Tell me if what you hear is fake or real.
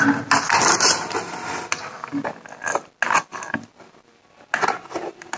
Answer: real